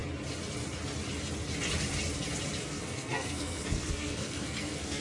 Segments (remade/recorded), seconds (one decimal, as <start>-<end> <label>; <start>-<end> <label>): 0.0-2.6 recorded; 2.6-5.0 remade